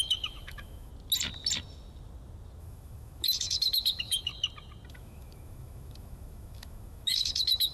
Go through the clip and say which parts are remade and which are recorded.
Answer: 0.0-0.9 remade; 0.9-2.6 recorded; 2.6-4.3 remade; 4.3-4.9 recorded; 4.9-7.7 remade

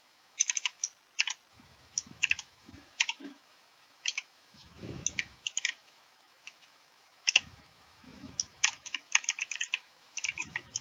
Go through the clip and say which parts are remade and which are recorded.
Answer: 0.0-0.8 remade; 0.8-1.5 recorded; 1.5-10.8 remade

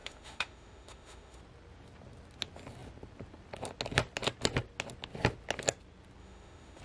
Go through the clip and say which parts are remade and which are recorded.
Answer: 0.0-1.4 remade; 1.4-6.2 recorded; 6.2-6.8 remade

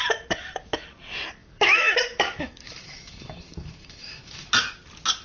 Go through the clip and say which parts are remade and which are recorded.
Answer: 0.0-1.4 recorded; 1.4-4.5 remade; 4.5-5.2 recorded

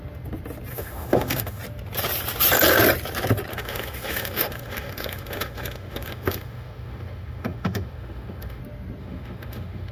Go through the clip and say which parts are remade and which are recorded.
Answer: 0.0-0.7 recorded; 0.7-1.6 remade; 1.6-3.5 recorded; 3.5-8.6 remade; 8.6-9.0 recorded; 9.0-9.9 remade

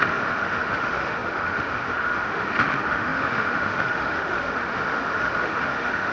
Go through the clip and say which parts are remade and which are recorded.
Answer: 0.0-6.1 remade

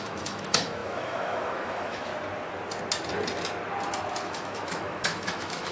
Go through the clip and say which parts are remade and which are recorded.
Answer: 0.0-2.1 remade; 2.1-4.2 recorded; 4.2-5.7 remade